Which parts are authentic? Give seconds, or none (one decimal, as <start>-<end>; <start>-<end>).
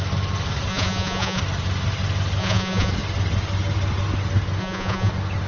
0.0-0.7; 1.4-2.4; 2.9-4.6; 5.1-5.5